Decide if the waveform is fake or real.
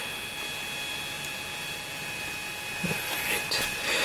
real